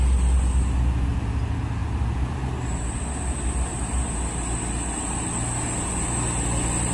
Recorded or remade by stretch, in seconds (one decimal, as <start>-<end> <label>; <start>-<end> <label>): 0.0-6.9 recorded